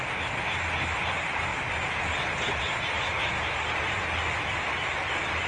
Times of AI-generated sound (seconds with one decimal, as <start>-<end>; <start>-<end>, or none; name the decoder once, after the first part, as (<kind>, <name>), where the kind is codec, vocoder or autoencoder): none